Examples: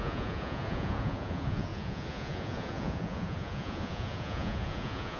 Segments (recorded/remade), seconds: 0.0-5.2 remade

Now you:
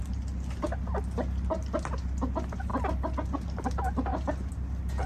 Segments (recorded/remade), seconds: 0.0-5.1 recorded

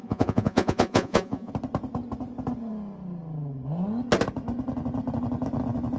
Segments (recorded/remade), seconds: 0.0-1.5 remade; 1.5-6.0 recorded

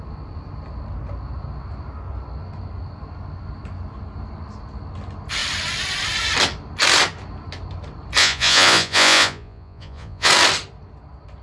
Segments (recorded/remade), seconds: 0.0-8.2 recorded; 8.2-10.3 remade; 10.3-11.4 recorded

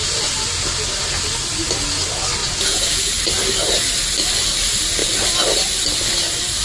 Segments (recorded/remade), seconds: 0.0-2.4 recorded; 2.4-3.1 remade; 3.1-6.6 recorded

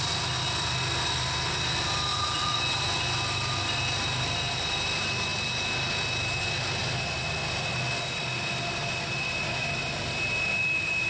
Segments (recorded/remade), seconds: 0.0-2.1 recorded; 2.1-2.6 remade; 2.6-11.1 recorded

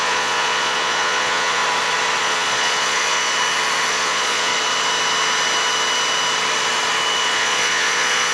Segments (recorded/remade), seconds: 0.0-1.6 remade; 1.6-2.2 recorded; 2.2-3.3 remade; 3.3-3.9 recorded; 3.9-4.5 remade; 4.5-7.2 recorded; 7.2-8.3 remade

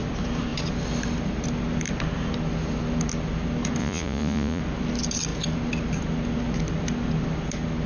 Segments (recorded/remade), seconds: 0.0-3.8 recorded; 3.8-4.6 remade; 4.6-7.9 recorded